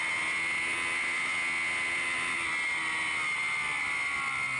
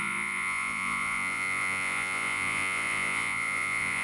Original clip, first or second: first